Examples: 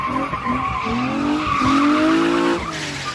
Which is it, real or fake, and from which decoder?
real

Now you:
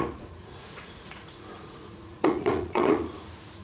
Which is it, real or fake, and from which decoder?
fake, vocoder, Vocos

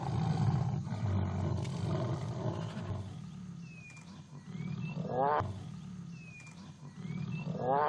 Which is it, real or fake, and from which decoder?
real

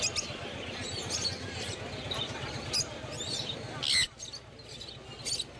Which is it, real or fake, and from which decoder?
real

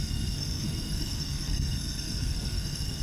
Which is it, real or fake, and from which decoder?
fake, codec, SNAC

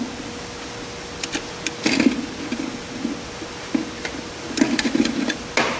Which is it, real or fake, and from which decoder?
real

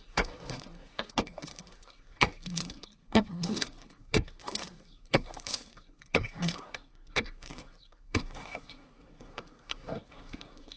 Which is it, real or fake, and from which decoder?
fake, codec, SNAC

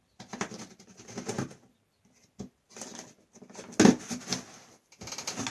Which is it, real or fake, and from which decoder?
real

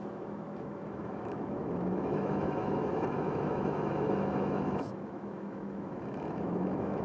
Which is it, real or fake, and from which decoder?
fake, autoencoder, DAC-VAE